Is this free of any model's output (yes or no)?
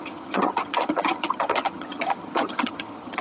no